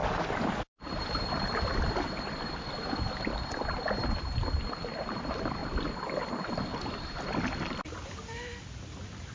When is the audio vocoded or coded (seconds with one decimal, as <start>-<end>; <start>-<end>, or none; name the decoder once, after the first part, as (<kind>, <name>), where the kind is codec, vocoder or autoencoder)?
0.0-5.6 (vocoder, BigVGAN v2); 6.8-9.3